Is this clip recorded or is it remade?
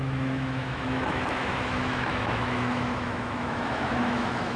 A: remade